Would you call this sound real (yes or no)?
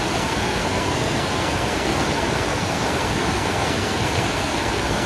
no